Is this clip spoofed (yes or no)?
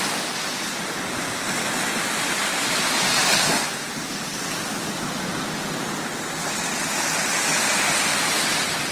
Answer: no